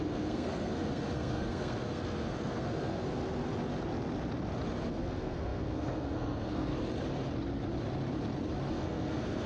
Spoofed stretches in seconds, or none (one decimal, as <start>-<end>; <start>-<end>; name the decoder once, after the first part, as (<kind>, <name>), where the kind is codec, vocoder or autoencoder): 0.0-3.2 (codec, SNAC); 4.9-6.7; 8.7-9.5